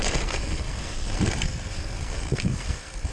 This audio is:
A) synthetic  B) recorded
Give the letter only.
A